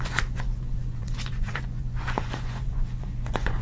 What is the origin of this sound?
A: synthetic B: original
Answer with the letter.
A